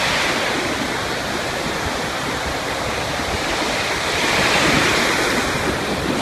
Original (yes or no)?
no